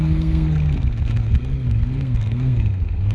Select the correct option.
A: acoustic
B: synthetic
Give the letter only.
B